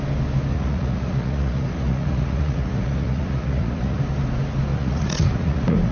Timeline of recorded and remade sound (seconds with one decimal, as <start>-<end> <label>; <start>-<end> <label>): 0.0-0.5 recorded; 0.5-4.0 remade; 4.0-4.7 recorded; 4.7-5.9 remade